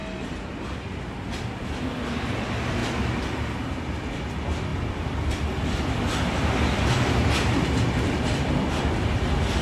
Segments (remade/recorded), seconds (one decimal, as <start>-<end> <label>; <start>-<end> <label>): 0.0-4.7 recorded; 4.7-8.8 remade; 8.8-9.6 recorded